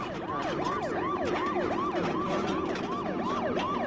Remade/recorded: recorded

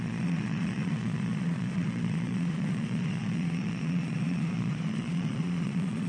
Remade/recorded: remade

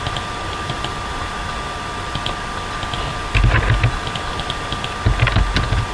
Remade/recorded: recorded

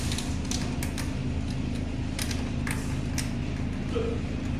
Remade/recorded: recorded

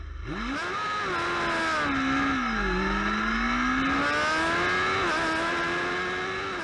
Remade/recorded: recorded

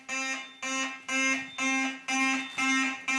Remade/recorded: recorded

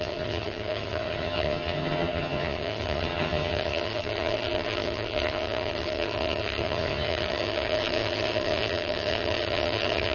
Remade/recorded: remade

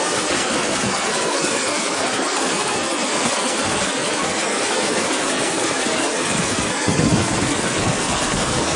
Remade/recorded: remade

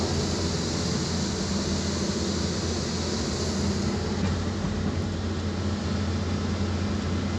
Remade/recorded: recorded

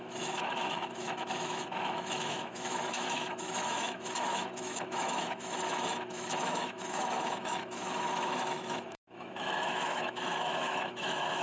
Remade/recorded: remade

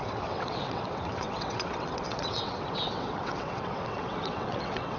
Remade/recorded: remade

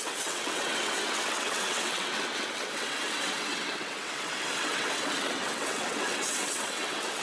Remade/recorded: remade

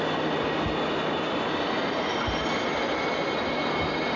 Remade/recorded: recorded